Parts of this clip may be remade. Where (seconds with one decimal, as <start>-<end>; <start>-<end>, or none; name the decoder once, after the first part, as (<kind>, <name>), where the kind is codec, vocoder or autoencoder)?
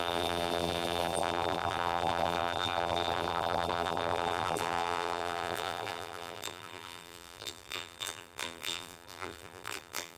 0.0-10.2 (vocoder, BigVGAN v2)